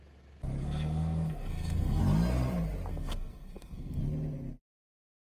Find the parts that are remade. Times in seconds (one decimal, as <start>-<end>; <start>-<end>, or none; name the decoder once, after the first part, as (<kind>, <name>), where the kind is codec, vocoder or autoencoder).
0.6-2.0 (codec, SNAC); 2.9-4.0